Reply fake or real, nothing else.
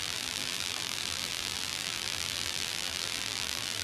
fake